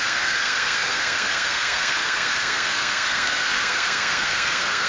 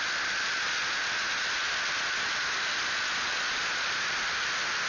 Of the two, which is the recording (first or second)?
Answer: second